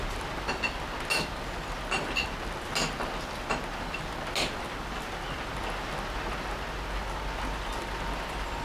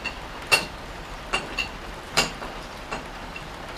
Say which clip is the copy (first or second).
second